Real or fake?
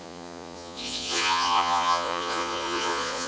fake